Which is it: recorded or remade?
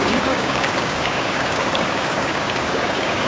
remade